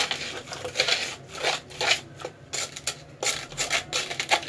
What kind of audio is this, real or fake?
real